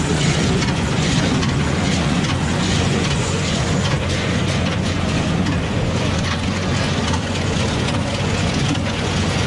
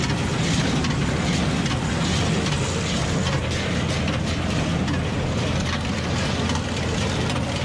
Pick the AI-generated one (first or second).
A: first